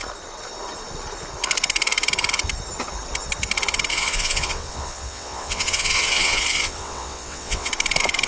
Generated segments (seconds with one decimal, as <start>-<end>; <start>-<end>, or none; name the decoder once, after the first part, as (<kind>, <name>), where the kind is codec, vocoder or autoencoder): 3.9-7.7 (vocoder, WaveNeXt)